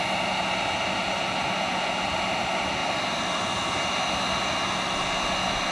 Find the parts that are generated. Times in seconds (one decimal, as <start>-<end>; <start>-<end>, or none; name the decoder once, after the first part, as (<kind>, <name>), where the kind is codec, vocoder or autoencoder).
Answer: none

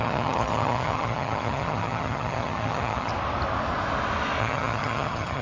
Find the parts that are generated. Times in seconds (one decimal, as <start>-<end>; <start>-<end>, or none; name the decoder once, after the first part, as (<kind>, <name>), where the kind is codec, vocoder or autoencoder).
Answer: 0.0-3.1 (vocoder, HiFi-GAN); 4.4-5.4

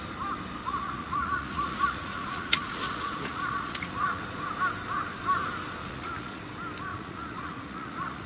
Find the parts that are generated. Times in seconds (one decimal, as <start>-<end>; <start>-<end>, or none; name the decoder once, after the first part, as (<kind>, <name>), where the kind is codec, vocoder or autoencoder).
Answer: 0.6-4.2 (vocoder, Vocos); 5.8-6.4; 6.9-8.3

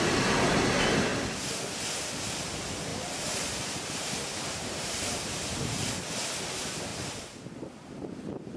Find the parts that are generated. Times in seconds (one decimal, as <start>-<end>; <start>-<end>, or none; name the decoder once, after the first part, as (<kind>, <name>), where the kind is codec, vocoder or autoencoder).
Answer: 2.9-5.9 (vocoder, BigVGAN v2)

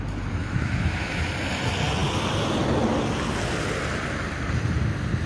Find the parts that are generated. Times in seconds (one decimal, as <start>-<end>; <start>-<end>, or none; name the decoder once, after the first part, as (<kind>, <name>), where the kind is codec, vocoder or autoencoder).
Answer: 0.4-1.3 (autoencoder, DAC-VAE)